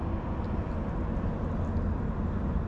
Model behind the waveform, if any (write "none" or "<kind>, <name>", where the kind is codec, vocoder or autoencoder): none